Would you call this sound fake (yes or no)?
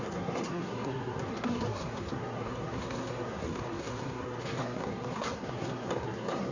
yes